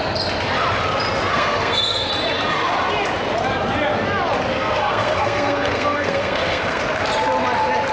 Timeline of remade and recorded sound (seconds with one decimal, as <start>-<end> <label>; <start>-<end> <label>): 0.0-1.3 recorded; 1.3-2.1 remade; 2.1-4.5 recorded; 4.5-6.8 remade; 6.8-7.9 recorded